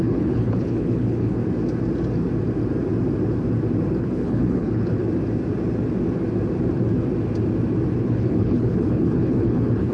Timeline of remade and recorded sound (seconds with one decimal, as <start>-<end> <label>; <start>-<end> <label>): 0.0-1.4 remade; 1.4-4.0 recorded; 4.0-5.0 remade; 5.0-8.0 recorded; 8.0-9.9 remade